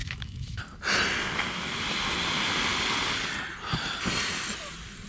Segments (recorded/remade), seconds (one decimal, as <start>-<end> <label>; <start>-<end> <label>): 0.0-0.6 remade; 0.6-5.1 recorded